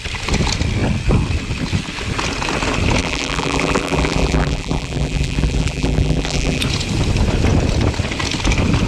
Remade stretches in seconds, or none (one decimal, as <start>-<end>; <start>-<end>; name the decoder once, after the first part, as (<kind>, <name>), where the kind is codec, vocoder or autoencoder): 3.0-6.6 (vocoder, BigVGAN v2)